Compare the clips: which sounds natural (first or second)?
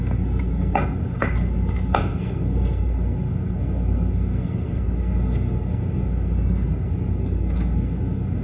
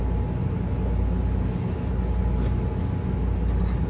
second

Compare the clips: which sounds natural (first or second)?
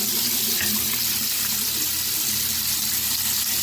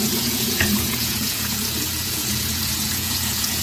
first